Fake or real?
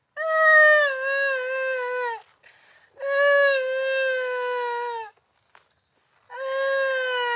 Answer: real